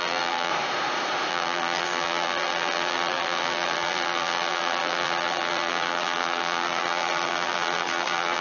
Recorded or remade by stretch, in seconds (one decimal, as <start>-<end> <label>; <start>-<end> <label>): 0.0-0.5 remade; 0.5-1.3 recorded; 1.3-8.4 remade